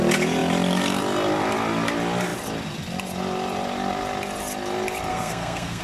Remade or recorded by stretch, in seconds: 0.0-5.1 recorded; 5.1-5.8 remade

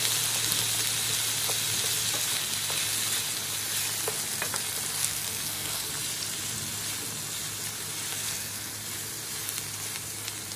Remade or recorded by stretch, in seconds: 0.0-5.0 recorded; 5.0-5.9 remade; 5.9-8.1 recorded; 8.1-8.7 remade; 8.7-10.6 recorded

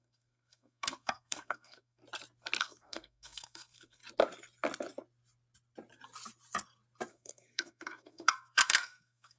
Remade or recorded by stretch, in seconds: 0.0-2.0 remade; 2.0-2.6 recorded; 2.6-4.0 remade; 4.0-7.1 recorded; 7.1-9.4 remade

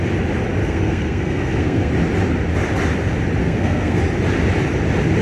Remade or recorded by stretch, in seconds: 0.0-0.6 recorded; 0.6-1.9 remade; 1.9-3.4 recorded; 3.4-4.0 remade; 4.0-5.2 recorded